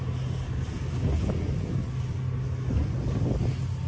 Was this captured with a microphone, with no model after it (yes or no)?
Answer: yes